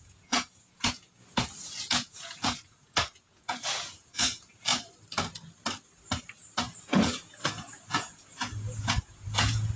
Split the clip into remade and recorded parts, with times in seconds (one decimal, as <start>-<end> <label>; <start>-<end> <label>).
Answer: 0.0-1.2 remade; 1.2-1.9 recorded; 1.9-4.7 remade; 4.7-6.8 recorded; 6.8-9.8 remade